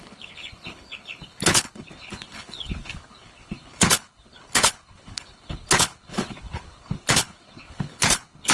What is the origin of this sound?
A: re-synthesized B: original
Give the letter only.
A